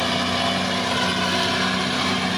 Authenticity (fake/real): real